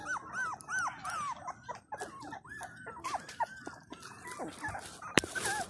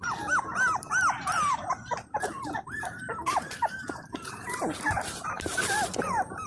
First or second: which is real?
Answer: first